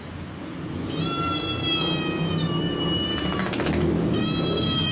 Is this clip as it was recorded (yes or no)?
yes